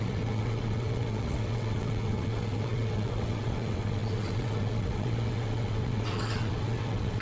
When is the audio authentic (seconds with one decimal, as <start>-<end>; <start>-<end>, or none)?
none